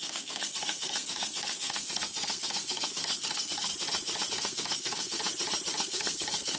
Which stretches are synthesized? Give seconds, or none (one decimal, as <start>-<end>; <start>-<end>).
0.0-3.7; 4.3-5.2; 5.8-6.6